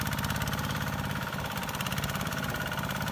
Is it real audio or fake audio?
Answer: fake